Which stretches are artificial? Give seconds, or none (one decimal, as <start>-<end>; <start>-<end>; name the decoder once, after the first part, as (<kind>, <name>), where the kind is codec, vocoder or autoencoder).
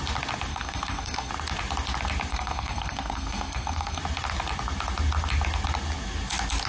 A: 0.5-1.3 (codec, SNAC); 2.3-4.0